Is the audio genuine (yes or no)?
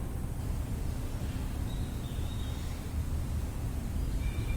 yes